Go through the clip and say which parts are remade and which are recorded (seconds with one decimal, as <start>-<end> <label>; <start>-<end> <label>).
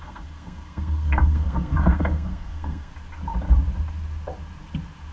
0.0-2.9 remade; 2.9-5.1 recorded